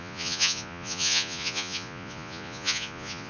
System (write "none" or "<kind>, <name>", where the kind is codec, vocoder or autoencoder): vocoder, Vocos